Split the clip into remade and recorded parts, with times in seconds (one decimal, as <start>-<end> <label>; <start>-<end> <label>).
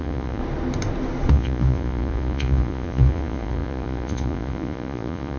0.0-0.4 remade; 0.4-1.3 recorded; 1.3-5.4 remade